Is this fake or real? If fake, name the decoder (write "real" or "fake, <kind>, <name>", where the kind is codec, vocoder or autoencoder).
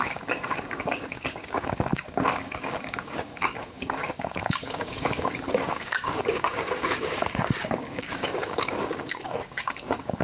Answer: fake, codec, DAC